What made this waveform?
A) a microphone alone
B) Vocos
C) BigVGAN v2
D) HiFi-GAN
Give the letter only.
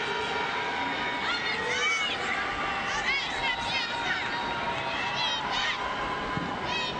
A